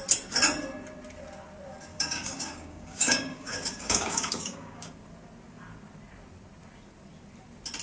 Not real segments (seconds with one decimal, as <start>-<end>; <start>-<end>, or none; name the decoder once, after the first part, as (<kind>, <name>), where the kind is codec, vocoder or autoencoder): 1.9-4.9 (codec, DAC)